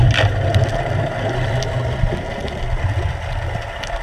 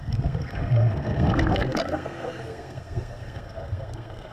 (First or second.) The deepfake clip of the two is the second